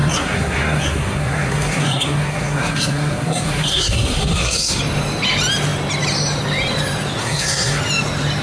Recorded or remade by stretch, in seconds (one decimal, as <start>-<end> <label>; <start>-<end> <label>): 0.0-4.8 remade; 4.8-7.2 recorded; 7.2-7.8 remade; 7.8-8.4 recorded